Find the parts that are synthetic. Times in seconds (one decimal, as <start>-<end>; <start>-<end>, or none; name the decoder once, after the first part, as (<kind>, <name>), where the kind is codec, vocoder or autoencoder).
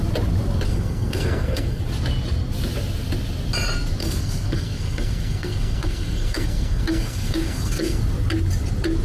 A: 0.7-1.8 (codec, SNAC); 4.0-8.0